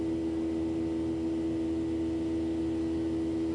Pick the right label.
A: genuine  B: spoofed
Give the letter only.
A